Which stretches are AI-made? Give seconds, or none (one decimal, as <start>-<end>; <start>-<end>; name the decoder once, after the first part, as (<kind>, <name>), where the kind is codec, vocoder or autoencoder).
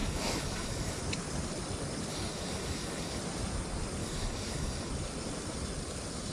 0.0-1.0 (codec, DAC); 2.1-3.2; 4.0-4.9